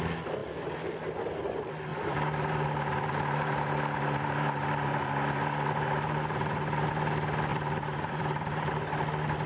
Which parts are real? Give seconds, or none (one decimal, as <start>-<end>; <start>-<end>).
0.0-1.9; 6.9-7.5; 8.7-9.5

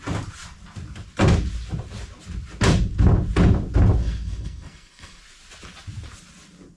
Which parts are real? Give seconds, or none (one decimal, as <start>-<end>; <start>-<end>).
0.0-4.0; 5.2-6.8

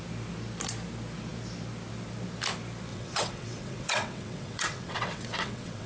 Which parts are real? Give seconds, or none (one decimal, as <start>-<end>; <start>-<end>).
0.0-2.9